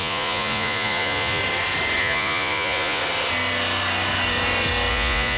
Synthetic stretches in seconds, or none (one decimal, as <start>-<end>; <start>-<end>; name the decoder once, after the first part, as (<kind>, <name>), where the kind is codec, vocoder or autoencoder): 0.0-1.4 (vocoder, Vocos); 2.0-3.0; 4.9-5.4